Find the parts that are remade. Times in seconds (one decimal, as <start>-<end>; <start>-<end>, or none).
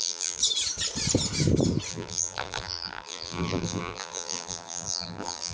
0.0-0.4; 1.9-5.5